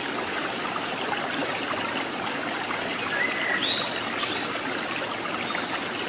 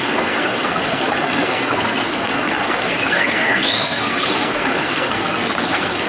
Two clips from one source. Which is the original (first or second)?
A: first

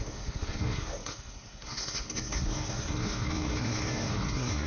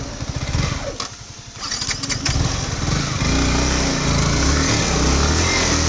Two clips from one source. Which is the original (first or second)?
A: second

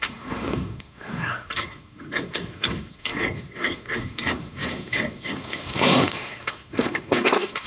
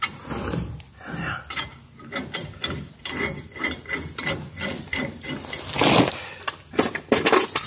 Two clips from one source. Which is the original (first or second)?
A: second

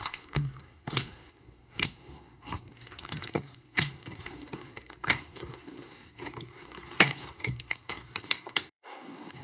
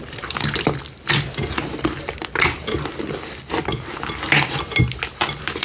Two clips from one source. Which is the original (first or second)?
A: second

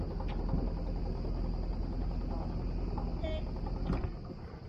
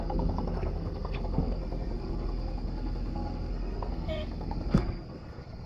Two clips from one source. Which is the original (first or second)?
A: first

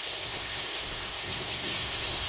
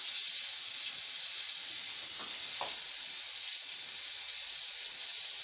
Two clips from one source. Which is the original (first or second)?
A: second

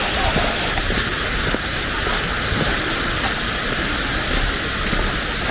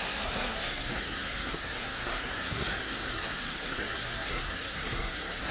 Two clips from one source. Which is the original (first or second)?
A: first